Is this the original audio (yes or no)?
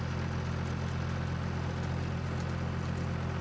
yes